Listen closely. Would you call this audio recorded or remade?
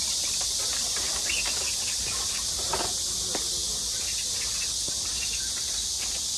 recorded